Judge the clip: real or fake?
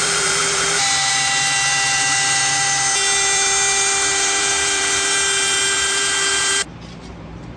fake